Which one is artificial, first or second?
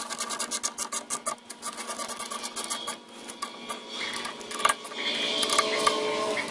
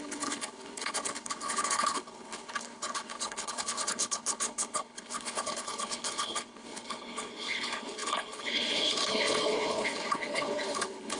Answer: second